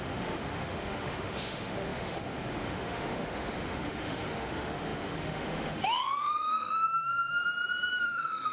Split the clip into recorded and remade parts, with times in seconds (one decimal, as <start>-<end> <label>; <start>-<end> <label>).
0.0-7.4 remade; 7.4-8.0 recorded; 8.0-8.5 remade